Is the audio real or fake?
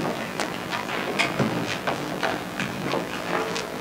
fake